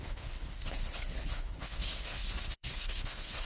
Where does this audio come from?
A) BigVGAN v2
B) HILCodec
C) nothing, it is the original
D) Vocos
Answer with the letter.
B